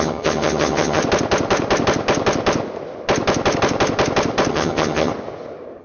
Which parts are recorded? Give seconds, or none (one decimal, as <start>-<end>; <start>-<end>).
1.0-4.5; 5.1-5.8